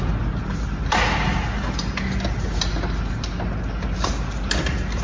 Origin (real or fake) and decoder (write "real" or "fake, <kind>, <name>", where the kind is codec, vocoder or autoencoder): real